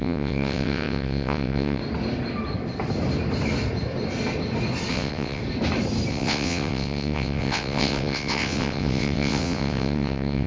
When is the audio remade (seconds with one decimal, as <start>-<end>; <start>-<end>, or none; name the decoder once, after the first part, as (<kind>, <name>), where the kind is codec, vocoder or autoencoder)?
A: 0.0-1.8 (vocoder, WaveNeXt); 4.9-5.4; 6.1-10.5